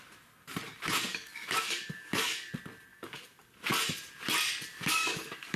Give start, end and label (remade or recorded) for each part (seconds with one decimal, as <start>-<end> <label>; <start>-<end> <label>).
0.0-1.1 recorded; 1.1-2.5 remade; 2.5-2.9 recorded; 2.9-3.5 remade; 3.5-4.7 recorded; 4.7-5.6 remade